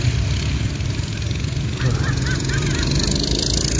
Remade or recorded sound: recorded